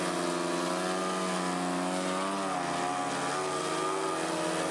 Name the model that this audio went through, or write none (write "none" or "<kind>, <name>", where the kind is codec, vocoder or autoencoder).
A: none